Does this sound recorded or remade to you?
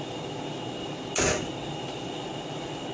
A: recorded